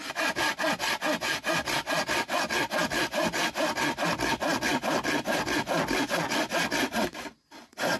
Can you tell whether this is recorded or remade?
recorded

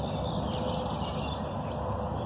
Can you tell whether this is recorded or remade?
recorded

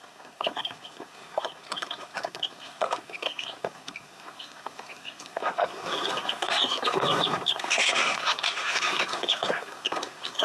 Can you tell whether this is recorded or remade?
remade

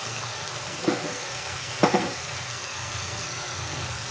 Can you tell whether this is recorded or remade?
remade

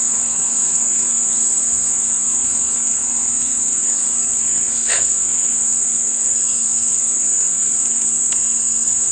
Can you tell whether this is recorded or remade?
remade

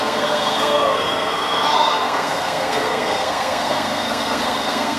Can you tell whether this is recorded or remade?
remade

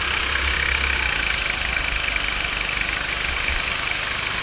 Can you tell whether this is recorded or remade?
recorded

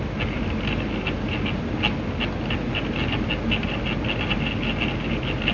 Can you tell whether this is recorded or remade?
recorded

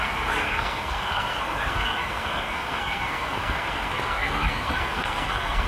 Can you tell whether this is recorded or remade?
remade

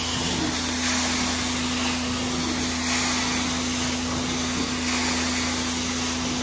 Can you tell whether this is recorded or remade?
recorded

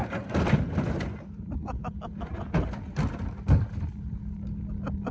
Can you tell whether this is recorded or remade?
recorded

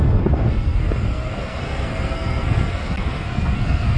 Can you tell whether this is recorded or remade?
remade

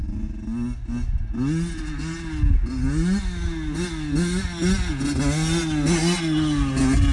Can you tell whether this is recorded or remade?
recorded